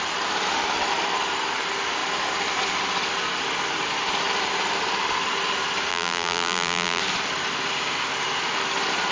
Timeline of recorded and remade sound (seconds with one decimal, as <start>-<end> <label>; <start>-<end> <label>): 0.0-5.9 recorded; 5.9-7.0 remade; 7.0-9.1 recorded